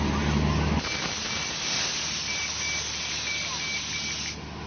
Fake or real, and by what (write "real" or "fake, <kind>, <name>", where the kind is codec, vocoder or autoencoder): real